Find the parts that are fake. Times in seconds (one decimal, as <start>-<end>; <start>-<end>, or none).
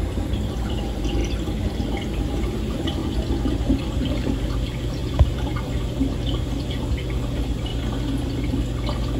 0.0-3.0; 3.5-7.7